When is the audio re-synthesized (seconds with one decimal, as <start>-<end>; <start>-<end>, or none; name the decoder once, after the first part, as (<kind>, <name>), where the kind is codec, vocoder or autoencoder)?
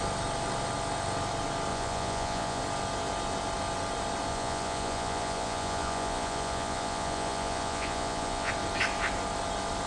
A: 1.7-2.6 (vocoder, Vocos); 4.3-8.5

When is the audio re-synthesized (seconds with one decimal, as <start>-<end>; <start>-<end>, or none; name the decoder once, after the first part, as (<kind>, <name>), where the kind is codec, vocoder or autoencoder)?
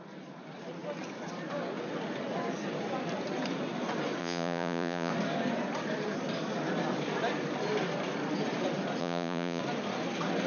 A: 4.2-5.1 (vocoder, Vocos); 9.0-9.6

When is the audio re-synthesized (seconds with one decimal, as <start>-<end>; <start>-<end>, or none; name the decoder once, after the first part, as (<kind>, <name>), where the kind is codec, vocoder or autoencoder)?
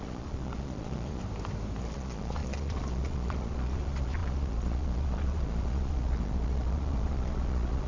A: 0.0-1.2 (vocoder, Vocos); 1.8-7.9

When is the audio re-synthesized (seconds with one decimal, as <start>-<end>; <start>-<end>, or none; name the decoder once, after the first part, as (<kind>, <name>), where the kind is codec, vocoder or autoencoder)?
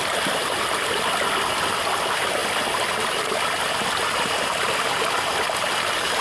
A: none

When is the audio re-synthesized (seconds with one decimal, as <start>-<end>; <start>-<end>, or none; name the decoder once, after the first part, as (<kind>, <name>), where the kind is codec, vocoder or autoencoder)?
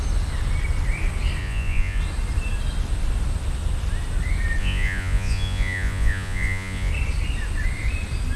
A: 1.4-2.0 (vocoder, Vocos); 4.6-6.9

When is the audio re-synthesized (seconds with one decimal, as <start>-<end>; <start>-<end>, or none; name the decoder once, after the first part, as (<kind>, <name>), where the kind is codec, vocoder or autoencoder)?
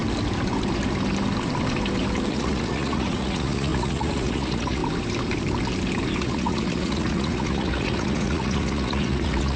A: 2.3-4.8 (vocoder, Vocos); 6.2-9.6